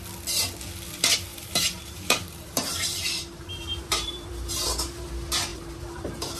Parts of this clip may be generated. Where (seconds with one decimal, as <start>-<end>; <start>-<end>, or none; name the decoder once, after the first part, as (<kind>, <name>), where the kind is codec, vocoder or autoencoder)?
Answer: 1.3-5.1 (vocoder, BigVGAN v2); 5.5-6.4